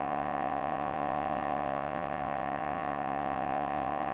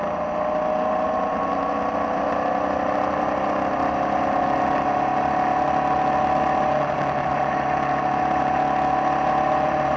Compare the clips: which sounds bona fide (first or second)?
second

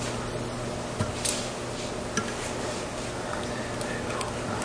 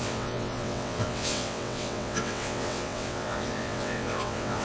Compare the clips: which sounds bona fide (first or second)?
first